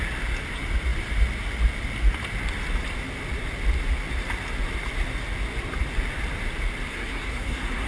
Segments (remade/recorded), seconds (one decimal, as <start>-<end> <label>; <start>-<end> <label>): 0.0-6.9 recorded; 6.9-7.9 remade